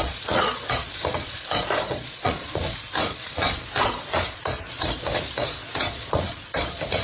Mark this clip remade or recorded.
remade